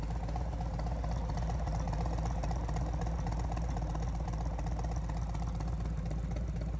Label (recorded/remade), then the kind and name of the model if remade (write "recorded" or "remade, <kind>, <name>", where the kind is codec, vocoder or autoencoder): recorded